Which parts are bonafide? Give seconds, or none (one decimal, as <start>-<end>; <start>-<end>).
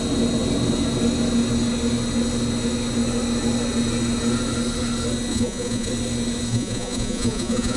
0.0-5.3; 5.9-6.5